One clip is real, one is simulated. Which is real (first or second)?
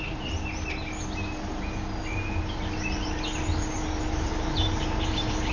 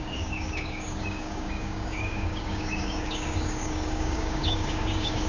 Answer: first